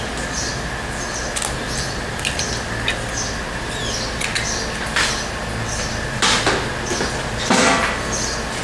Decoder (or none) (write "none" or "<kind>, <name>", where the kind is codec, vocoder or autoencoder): none